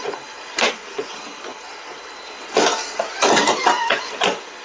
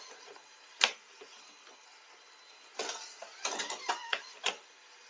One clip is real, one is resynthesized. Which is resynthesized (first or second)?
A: first